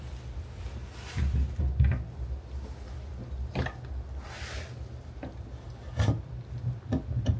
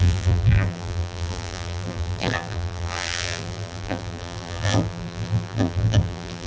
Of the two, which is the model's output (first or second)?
second